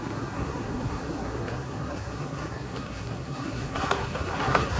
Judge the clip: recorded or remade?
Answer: remade